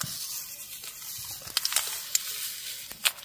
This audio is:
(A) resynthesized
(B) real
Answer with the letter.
B